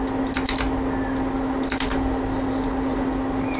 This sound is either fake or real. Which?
real